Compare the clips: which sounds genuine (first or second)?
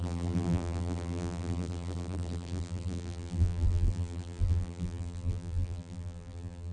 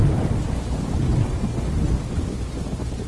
second